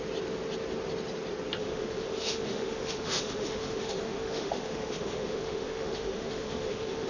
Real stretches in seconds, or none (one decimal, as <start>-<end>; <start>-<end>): 0.0-1.6